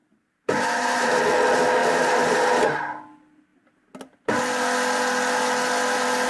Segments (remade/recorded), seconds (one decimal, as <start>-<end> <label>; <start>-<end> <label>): 0.0-1.2 remade; 1.2-1.8 recorded; 1.8-2.8 remade; 2.8-6.3 recorded